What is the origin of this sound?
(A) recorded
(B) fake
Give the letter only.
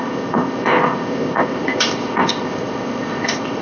B